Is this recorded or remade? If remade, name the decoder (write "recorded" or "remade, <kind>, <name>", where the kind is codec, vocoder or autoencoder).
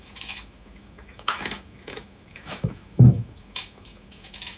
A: remade, autoencoder, DAC-VAE